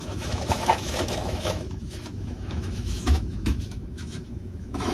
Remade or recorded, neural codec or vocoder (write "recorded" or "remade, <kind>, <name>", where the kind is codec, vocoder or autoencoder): remade, autoencoder, DAC-VAE